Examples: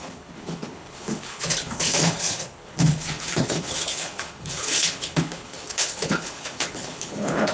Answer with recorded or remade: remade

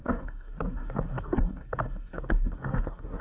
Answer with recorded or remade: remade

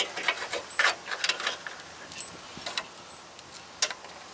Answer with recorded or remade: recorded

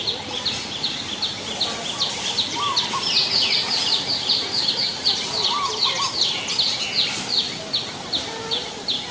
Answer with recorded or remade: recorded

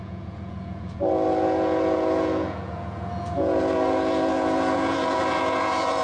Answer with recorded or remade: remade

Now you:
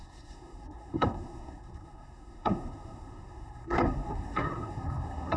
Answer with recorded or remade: remade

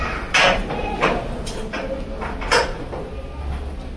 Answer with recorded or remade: recorded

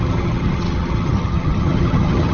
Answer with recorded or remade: remade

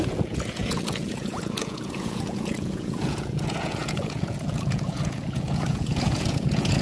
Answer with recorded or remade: remade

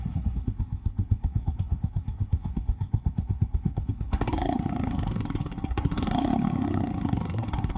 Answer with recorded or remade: remade